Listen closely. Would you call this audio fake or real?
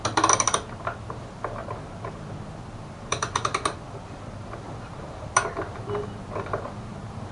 fake